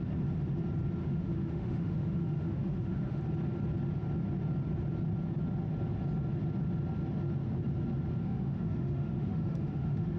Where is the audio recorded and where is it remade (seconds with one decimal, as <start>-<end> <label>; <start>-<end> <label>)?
0.0-1.0 recorded; 1.0-3.2 remade; 3.2-8.2 recorded; 8.2-10.2 remade